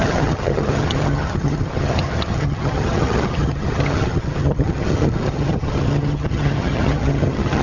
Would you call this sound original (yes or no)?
no